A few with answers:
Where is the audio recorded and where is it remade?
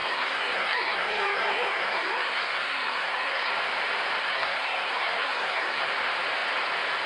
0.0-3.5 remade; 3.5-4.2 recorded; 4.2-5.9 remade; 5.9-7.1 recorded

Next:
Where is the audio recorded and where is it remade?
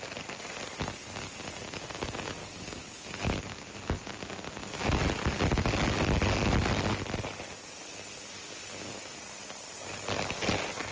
0.0-2.4 recorded; 2.4-3.7 remade; 3.7-10.9 recorded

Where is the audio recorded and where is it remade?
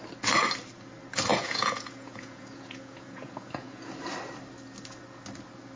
0.0-1.3 recorded; 1.3-3.9 remade; 3.9-5.8 recorded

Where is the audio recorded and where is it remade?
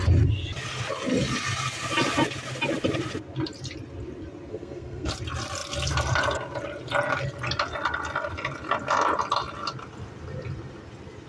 0.0-4.5 recorded; 4.5-5.1 remade; 5.1-11.3 recorded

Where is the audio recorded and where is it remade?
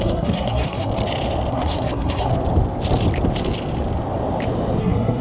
0.0-0.9 remade; 0.9-1.5 recorded; 1.5-2.3 remade; 2.3-4.8 recorded; 4.8-5.2 remade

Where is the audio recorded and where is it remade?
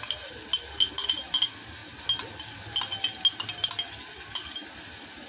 0.0-5.3 recorded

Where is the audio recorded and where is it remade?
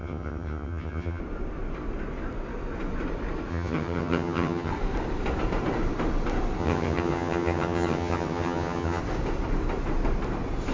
0.0-1.2 remade; 1.2-3.5 recorded; 3.5-4.7 remade; 4.7-6.6 recorded; 6.6-9.0 remade; 9.0-10.7 recorded